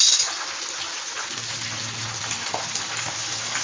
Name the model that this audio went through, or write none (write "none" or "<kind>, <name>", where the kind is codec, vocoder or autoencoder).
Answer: none